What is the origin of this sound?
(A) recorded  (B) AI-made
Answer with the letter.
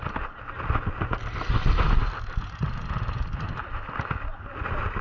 A